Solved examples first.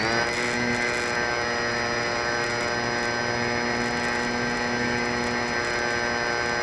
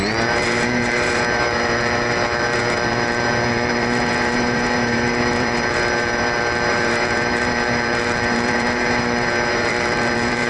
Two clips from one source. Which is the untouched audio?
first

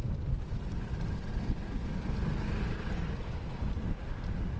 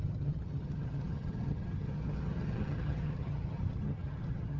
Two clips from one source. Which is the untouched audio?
first